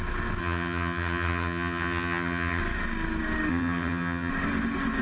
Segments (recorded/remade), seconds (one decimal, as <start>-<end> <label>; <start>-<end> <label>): 0.0-0.4 recorded; 0.4-2.6 remade; 2.6-3.5 recorded; 3.5-4.3 remade; 4.3-5.0 recorded